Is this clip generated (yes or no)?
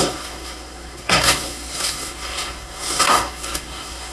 yes